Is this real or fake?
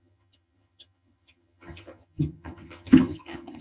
fake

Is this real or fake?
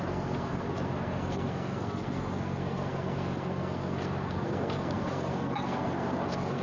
fake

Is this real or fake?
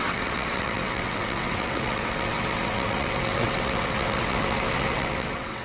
fake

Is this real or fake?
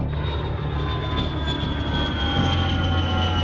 real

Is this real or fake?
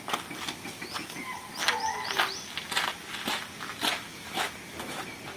real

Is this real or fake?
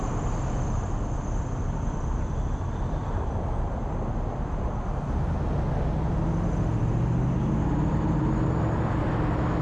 real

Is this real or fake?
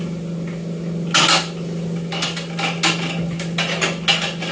real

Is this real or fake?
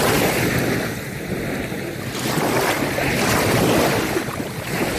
real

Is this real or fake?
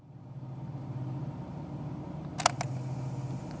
real